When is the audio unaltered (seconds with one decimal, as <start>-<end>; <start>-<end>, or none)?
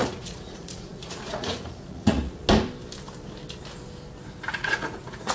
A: 2.4-4.5